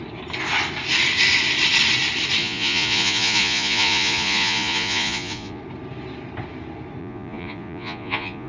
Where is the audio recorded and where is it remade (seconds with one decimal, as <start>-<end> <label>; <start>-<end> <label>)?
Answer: 0.0-2.4 recorded; 2.4-5.6 remade; 5.6-7.0 recorded; 7.0-8.5 remade